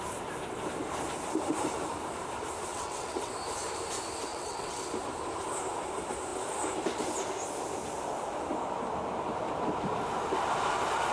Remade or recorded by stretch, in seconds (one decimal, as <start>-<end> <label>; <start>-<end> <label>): 0.0-2.7 recorded; 2.7-3.3 remade; 3.3-4.3 recorded; 4.3-4.8 remade; 4.8-11.1 recorded